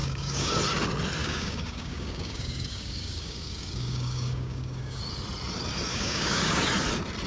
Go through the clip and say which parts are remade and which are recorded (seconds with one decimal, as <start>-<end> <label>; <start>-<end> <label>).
0.0-0.5 remade; 0.5-1.2 recorded; 1.2-5.0 remade; 5.0-5.9 recorded; 5.9-6.6 remade; 6.6-7.3 recorded